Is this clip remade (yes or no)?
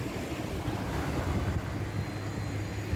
no